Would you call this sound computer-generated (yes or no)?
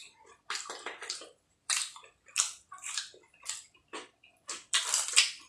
yes